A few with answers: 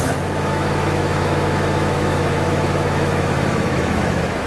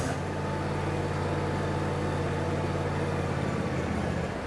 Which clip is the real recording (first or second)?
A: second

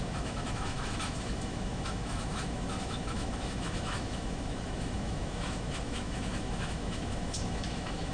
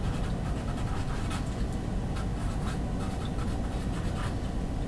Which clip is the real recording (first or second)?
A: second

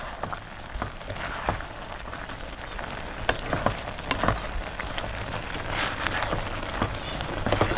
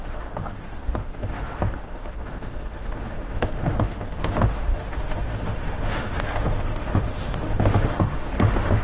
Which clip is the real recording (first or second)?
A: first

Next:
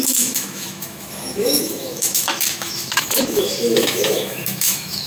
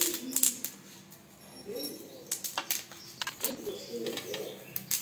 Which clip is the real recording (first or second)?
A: second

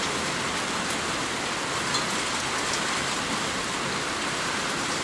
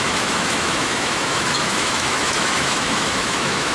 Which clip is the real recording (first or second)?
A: first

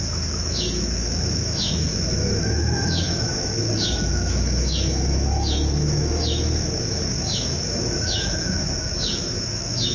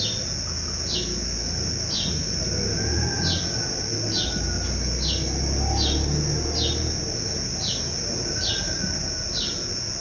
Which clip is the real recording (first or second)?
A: second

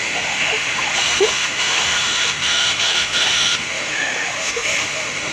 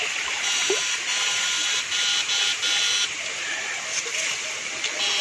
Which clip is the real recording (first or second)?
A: second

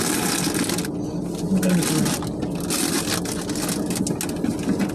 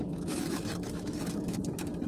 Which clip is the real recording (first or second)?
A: first